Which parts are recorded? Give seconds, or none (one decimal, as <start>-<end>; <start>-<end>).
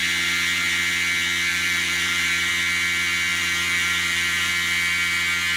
0.0-1.5; 2.5-3.3; 4.5-5.6